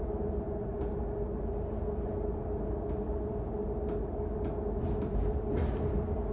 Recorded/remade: recorded